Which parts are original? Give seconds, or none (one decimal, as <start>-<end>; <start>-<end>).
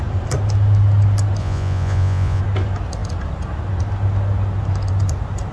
0.0-1.4; 2.4-5.5